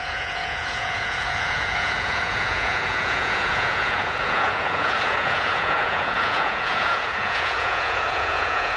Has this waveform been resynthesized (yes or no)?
yes